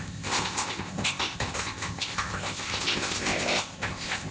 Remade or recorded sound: remade